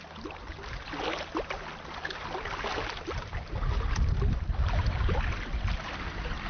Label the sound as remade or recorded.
recorded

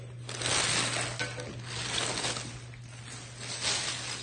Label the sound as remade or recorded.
recorded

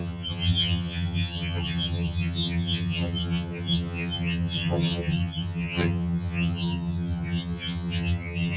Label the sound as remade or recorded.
remade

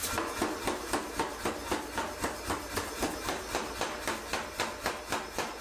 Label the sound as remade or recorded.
recorded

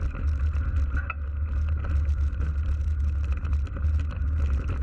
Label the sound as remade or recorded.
recorded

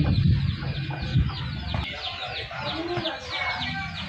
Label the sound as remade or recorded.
recorded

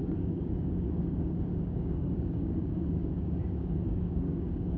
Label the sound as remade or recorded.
remade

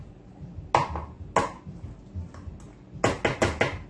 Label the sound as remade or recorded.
recorded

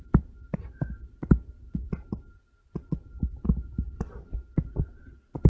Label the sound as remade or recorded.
recorded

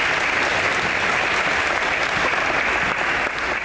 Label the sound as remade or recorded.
recorded